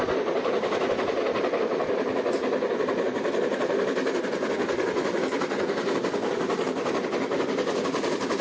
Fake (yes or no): no